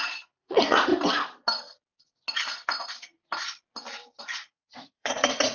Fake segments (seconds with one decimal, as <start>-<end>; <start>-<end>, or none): 0.0-0.9; 4.2-5.5